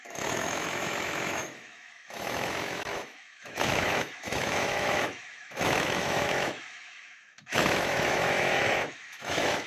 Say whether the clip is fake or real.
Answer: fake